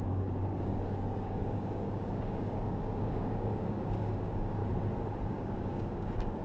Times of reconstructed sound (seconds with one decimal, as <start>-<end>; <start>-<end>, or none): 0.0-4.6; 5.3-6.4